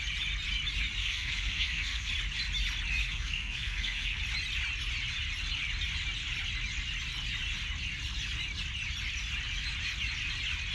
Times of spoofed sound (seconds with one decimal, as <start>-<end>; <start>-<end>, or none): 1.0-2.1; 3.0-4.2